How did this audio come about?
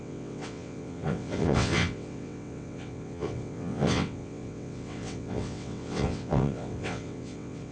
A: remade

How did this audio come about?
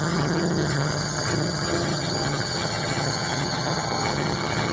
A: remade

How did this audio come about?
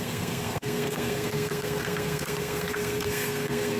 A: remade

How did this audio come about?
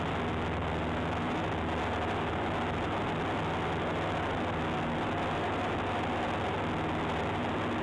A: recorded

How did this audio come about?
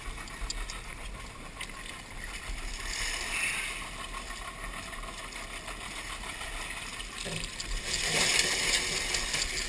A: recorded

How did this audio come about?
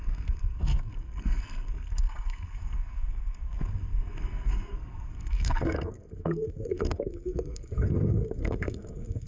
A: remade